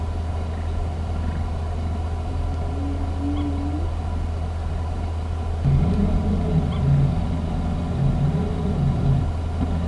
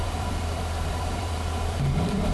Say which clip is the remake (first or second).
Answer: second